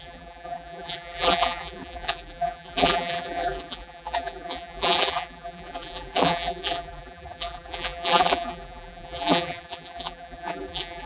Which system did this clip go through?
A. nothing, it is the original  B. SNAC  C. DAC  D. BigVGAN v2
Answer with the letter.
D